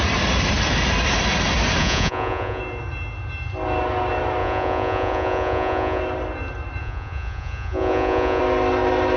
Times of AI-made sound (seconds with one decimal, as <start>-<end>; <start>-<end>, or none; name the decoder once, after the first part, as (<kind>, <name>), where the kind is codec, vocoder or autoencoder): 1.8-2.6 (vocoder, Vocos); 4.4-6.0; 6.8-8.4